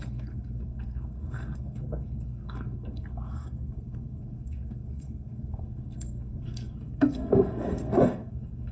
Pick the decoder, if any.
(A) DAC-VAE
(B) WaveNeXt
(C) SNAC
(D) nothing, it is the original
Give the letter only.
C